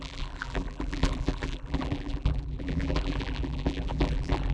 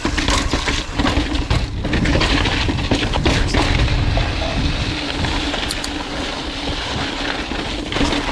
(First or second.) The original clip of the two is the second